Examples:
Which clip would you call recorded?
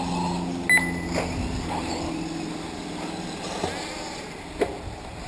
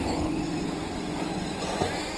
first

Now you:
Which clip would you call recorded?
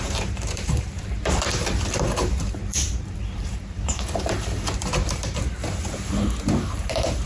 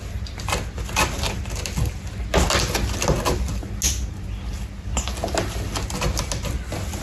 second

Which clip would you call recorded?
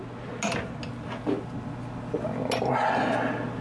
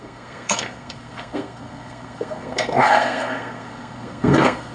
first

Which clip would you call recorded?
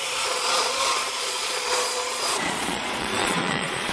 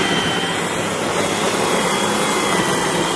second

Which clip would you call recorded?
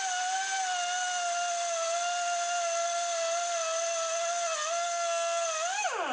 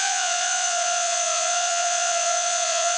first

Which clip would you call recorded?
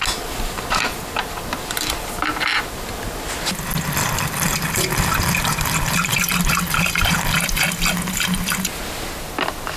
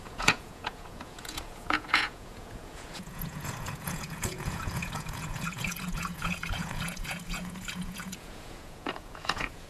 first